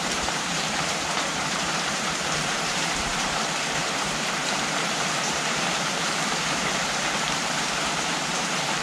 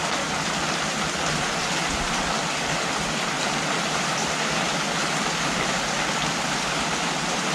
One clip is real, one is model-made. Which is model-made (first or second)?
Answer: first